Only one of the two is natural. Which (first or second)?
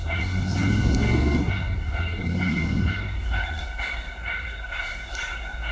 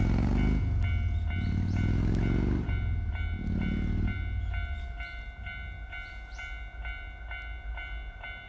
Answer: second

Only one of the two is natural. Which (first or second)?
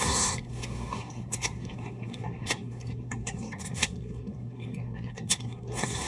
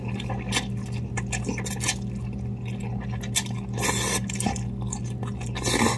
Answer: second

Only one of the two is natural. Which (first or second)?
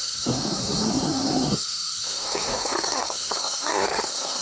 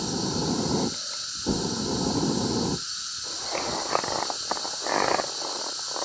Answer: second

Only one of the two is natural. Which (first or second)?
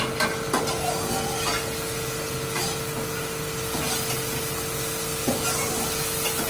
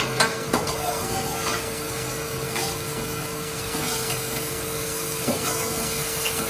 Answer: first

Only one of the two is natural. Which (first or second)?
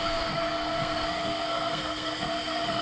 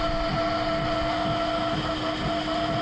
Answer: second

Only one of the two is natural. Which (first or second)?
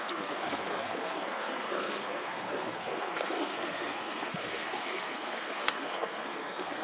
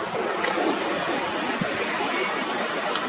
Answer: second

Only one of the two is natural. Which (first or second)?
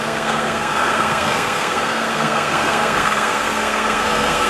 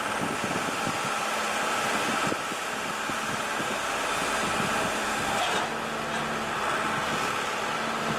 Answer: second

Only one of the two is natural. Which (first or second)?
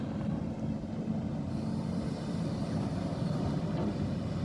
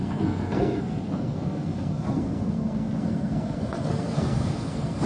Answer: first